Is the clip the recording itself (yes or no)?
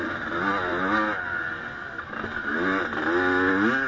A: yes